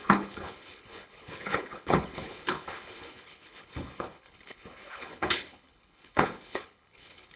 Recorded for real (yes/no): no